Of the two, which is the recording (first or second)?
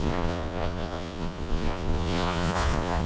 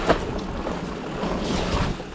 second